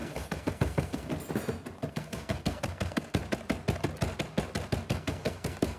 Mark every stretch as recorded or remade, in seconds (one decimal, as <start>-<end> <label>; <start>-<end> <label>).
0.0-1.1 remade; 1.1-1.9 recorded; 1.9-3.2 remade; 3.2-4.9 recorded; 4.9-5.8 remade